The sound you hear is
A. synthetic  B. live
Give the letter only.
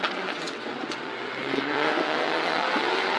A